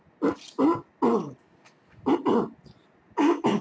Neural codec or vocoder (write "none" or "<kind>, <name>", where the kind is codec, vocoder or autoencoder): none